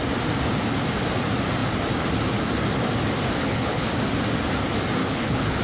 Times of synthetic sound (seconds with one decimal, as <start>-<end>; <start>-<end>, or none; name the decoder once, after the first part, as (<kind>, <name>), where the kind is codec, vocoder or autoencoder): 3.4-3.9 (codec, HILCodec); 5.0-5.6